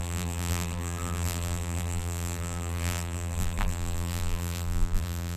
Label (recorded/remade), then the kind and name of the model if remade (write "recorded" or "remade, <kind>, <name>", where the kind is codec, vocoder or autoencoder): remade, vocoder, BigVGAN v2